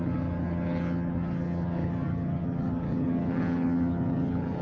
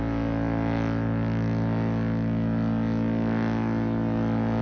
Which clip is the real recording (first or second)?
second